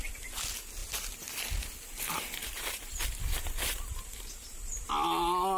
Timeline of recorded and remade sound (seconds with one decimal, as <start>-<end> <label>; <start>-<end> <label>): 0.0-5.6 recorded